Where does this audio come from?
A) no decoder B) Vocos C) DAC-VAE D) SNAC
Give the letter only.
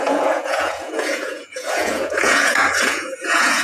B